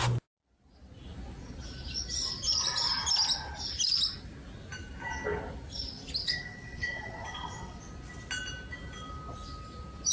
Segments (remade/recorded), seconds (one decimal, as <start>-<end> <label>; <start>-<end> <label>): 0.0-6.2 recorded; 6.2-7.8 remade; 7.8-10.1 recorded